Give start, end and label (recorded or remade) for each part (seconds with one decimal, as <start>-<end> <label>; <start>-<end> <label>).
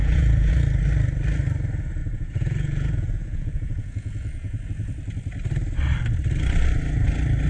0.0-0.5 remade; 0.5-2.0 recorded; 2.0-4.6 remade; 4.6-7.5 recorded